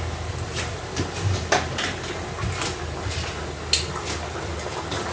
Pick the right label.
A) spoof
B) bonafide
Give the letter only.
B